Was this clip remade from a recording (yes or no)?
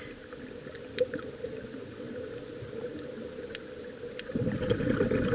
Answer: no